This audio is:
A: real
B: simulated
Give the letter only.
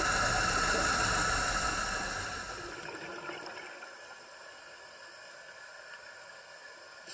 A